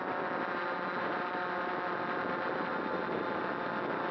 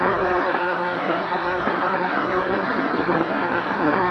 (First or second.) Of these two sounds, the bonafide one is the first